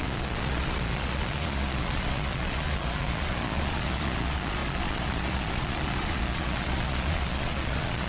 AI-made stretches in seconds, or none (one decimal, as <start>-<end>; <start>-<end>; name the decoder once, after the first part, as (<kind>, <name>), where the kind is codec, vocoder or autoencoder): 0.0-8.1 (vocoder, Vocos)